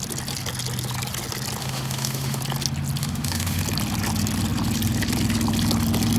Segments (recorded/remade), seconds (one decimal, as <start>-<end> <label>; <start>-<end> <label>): 0.0-1.6 recorded; 1.6-2.4 remade; 2.4-3.0 recorded; 3.0-3.6 remade; 3.6-6.2 recorded

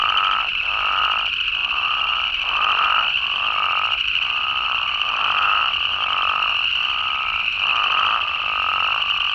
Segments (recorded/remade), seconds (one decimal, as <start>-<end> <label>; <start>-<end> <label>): 0.0-9.3 recorded

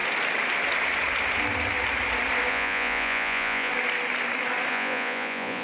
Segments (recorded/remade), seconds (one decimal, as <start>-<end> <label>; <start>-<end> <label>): 0.0-2.5 recorded; 2.5-3.7 remade; 3.7-4.7 recorded; 4.7-5.6 remade